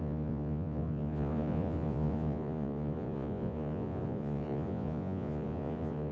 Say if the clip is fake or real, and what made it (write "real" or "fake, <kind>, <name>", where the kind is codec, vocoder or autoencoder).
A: fake, vocoder, Vocos